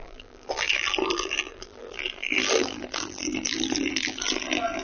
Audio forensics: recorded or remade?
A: remade